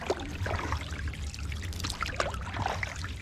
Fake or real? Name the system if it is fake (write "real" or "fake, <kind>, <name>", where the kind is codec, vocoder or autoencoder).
real